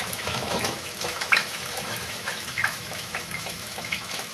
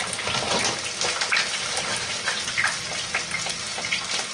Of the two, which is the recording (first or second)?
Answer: second